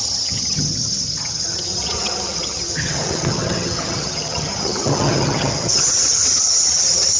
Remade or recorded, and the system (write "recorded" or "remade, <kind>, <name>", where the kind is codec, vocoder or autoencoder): remade, vocoder, HiFi-GAN